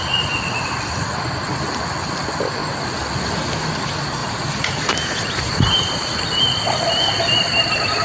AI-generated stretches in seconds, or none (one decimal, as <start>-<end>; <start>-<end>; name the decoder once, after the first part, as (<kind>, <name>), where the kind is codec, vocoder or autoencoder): 4.2-6.4 (vocoder, BigVGAN v2)